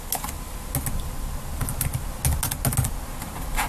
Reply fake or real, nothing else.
real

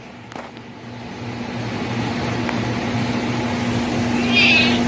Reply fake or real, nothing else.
real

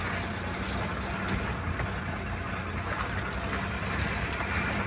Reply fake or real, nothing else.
real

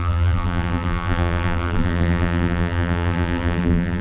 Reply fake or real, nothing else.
fake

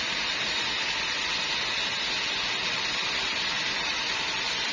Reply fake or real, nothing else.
real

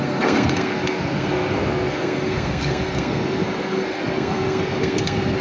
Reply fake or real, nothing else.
fake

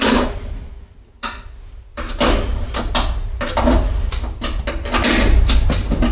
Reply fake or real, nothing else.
real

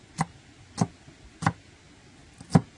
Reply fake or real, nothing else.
real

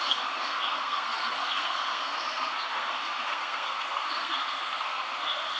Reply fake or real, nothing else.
fake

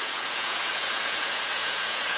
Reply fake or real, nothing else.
fake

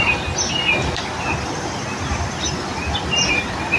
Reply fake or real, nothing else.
real